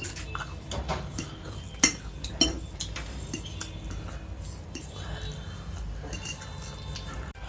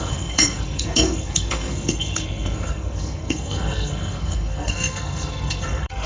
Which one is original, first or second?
first